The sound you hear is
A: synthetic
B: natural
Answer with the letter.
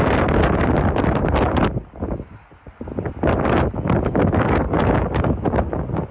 B